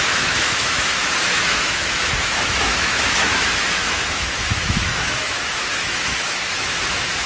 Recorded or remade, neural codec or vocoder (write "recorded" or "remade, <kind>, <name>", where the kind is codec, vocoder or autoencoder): remade, autoencoder, DAC-VAE